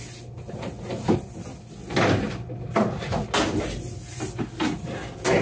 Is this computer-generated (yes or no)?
no